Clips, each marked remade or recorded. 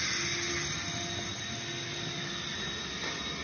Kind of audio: recorded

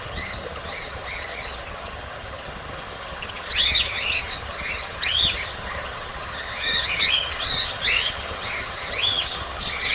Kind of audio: remade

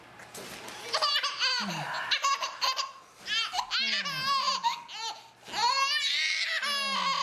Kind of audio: recorded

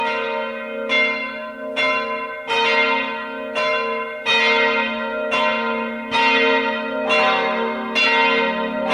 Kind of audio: recorded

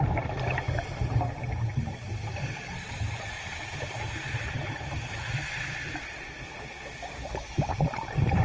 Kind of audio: remade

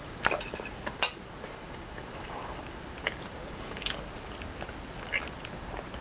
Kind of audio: recorded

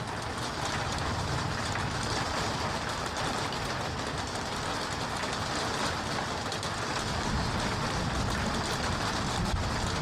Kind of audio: recorded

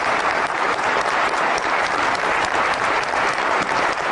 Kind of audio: remade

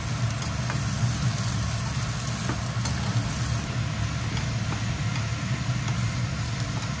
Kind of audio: recorded